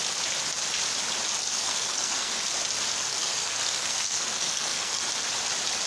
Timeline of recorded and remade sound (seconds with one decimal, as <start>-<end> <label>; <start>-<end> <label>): 0.0-1.4 recorded; 1.4-2.3 remade; 2.3-2.9 recorded; 2.9-5.0 remade; 5.0-5.9 recorded